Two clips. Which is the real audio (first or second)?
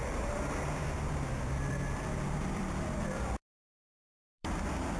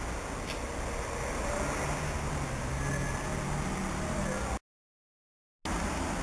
second